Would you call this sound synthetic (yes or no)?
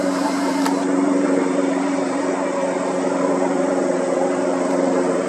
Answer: yes